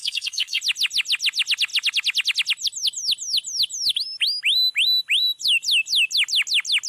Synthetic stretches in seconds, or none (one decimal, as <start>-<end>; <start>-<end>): 0.0-0.6